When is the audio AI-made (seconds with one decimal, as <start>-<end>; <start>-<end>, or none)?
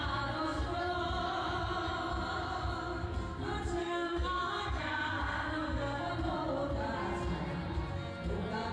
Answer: 3.8-6.1